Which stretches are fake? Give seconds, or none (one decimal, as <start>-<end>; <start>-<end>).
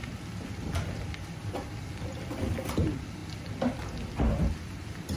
none